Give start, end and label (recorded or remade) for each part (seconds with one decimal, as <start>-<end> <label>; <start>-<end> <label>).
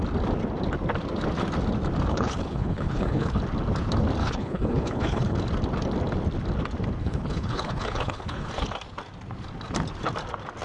0.0-2.1 recorded; 2.1-3.4 remade; 3.4-4.2 recorded; 4.2-5.4 remade; 5.4-7.0 recorded; 7.0-8.5 remade; 8.5-10.6 recorded